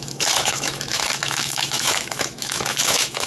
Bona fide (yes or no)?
no